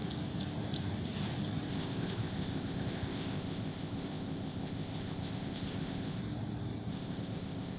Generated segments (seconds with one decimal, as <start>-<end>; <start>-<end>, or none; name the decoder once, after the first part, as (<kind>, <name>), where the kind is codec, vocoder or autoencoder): 1.7-6.2 (codec, ZipCodec); 6.9-7.8